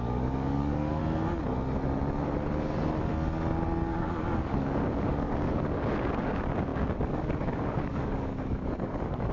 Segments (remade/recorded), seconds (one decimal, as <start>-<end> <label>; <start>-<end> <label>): 0.0-1.0 remade; 1.0-3.9 recorded; 3.9-9.3 remade